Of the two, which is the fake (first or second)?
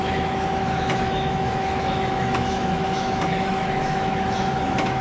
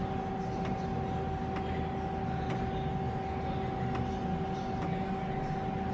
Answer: first